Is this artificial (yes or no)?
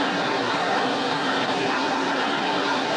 yes